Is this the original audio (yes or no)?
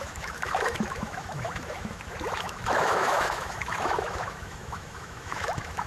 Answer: no